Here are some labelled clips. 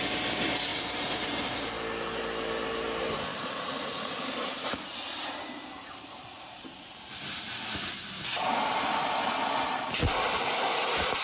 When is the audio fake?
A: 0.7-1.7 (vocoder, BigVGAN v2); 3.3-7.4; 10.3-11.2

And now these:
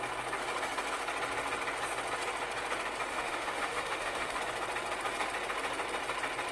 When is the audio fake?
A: 3.1-4.4 (autoencoder, DAC-VAE)

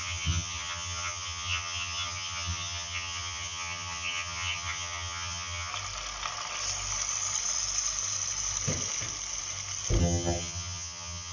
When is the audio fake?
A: 0.0-5.7 (vocoder, HiFi-GAN); 10.0-11.3

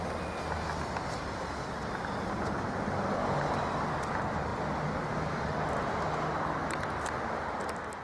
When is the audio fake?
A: none

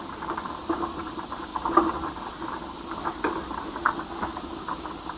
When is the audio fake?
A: none

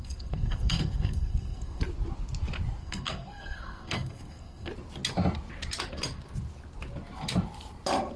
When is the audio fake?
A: 0.0-1.8 (codec, SNAC); 2.8-4.7